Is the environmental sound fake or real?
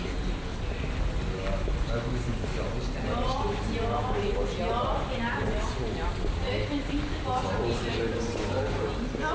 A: real